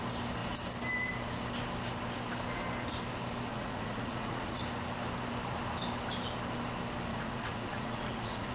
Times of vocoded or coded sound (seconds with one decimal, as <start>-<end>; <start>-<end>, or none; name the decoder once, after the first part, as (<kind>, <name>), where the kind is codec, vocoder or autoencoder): 3.5-4.6 (vocoder, Vocos); 7.1-8.5